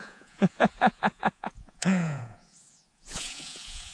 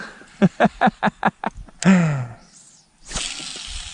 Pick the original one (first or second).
second